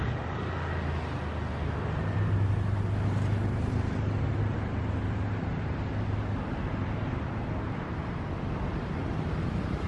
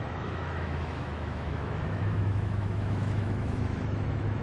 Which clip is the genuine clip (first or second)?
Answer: first